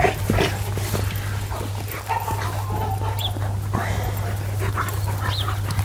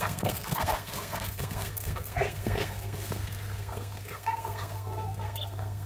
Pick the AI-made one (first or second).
second